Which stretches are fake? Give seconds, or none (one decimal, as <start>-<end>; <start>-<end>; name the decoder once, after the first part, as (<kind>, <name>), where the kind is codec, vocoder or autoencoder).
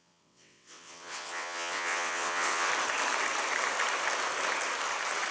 0.0-2.7 (vocoder, WaveNeXt)